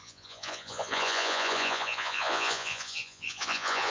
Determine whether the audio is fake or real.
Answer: fake